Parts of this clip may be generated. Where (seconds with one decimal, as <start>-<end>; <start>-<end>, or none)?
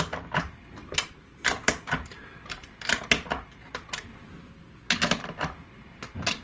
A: 0.8-3.0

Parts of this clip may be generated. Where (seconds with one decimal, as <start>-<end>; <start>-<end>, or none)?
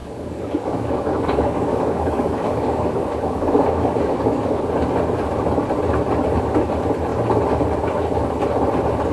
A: 0.0-4.6